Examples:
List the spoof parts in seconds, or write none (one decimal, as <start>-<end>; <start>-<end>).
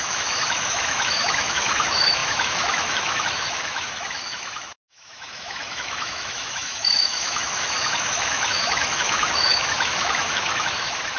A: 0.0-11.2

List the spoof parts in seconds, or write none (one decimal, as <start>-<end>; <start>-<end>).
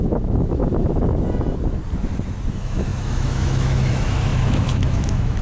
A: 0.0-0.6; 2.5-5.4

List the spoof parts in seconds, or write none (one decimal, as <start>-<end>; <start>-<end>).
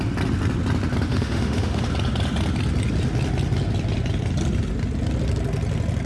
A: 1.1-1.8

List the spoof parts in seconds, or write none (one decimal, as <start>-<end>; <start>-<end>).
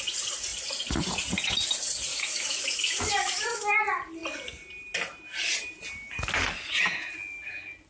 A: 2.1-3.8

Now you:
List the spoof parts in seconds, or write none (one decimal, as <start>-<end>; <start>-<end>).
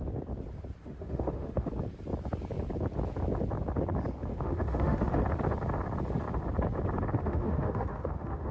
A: 0.8-1.7; 4.3-5.2; 7.2-8.5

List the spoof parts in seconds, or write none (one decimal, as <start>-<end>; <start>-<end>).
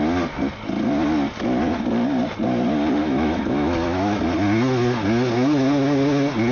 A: 3.0-4.2